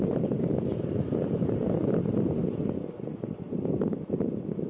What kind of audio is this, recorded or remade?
recorded